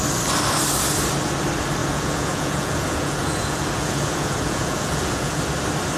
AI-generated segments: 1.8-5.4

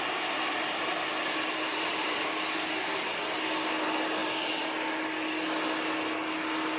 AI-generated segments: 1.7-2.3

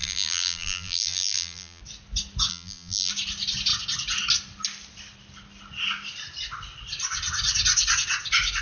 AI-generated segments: 0.0-1.8; 2.5-3.1

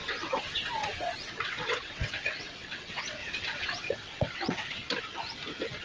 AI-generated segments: 0.0-4.8